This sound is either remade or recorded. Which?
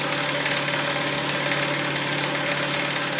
recorded